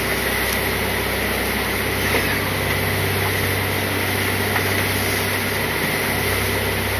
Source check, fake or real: real